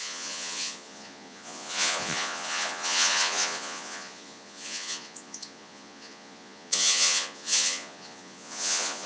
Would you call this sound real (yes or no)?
no